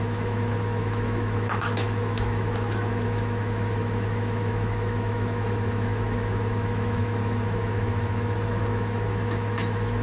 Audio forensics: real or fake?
fake